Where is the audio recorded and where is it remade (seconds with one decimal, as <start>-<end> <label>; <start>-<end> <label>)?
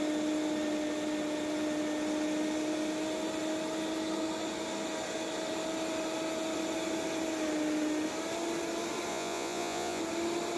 0.0-9.1 recorded; 9.1-10.0 remade; 10.0-10.6 recorded